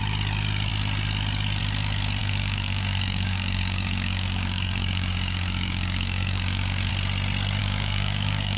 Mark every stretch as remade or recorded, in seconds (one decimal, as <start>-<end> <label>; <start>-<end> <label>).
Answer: 0.0-2.2 recorded; 2.2-6.9 remade; 6.9-7.6 recorded; 7.6-8.6 remade